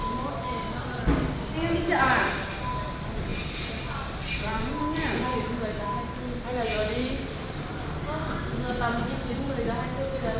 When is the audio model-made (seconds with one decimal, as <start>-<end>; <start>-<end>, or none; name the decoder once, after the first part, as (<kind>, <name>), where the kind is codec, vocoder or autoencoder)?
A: 3.3-4.8 (vocoder, BigVGAN v2)